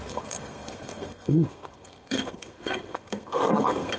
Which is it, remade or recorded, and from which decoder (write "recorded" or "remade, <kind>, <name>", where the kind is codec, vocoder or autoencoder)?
remade, codec, SNAC